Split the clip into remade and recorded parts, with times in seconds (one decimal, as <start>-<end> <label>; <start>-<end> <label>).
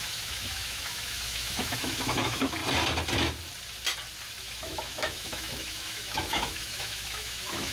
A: 0.0-2.6 remade; 2.6-4.4 recorded; 4.4-7.7 remade